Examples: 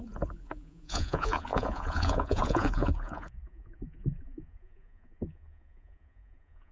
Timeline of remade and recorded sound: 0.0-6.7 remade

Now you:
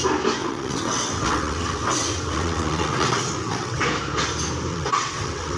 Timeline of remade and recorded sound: 0.0-0.4 recorded; 0.4-3.8 remade; 3.8-4.7 recorded; 4.7-5.6 remade

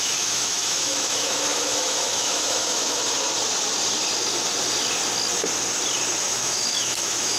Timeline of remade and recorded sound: 0.0-3.0 remade; 3.0-6.3 recorded; 6.3-7.4 remade

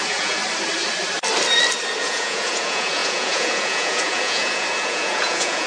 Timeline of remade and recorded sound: 0.0-0.4 remade; 0.4-2.0 recorded; 2.0-5.7 remade

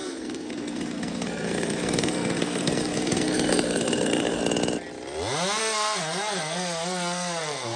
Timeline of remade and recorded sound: 0.0-4.4 remade; 4.4-5.6 recorded; 5.6-7.8 remade

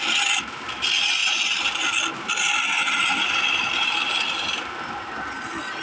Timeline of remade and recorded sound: 0.0-5.8 recorded

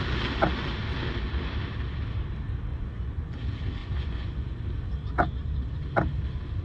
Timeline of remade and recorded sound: 0.0-2.7 recorded; 2.7-3.3 remade; 3.3-3.8 recorded; 3.8-4.6 remade; 4.6-6.6 recorded